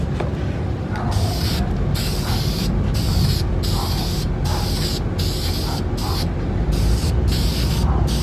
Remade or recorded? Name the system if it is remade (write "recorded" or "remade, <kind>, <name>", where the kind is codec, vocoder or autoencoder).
recorded